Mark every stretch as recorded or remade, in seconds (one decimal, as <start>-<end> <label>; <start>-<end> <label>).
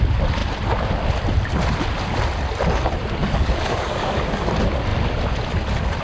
0.0-3.2 recorded; 3.2-4.5 remade; 4.5-6.0 recorded